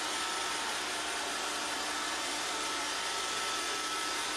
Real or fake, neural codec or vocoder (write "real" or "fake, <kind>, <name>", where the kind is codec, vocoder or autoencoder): real